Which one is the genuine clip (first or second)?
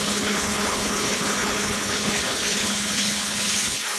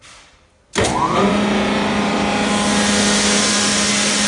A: second